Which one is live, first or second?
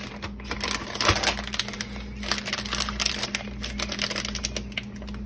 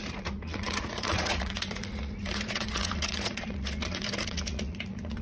first